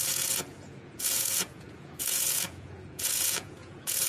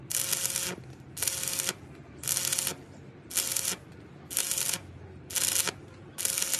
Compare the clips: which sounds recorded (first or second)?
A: second